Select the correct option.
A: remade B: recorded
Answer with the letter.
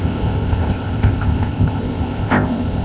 A